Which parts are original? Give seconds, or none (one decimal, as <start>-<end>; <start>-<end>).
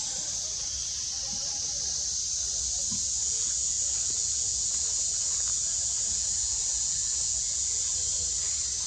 0.0-2.9; 8.1-8.9